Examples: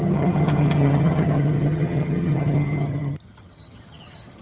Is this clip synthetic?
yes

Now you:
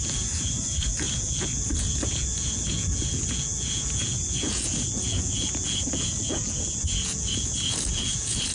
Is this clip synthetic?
yes